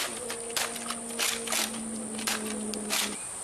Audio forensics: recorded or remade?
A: recorded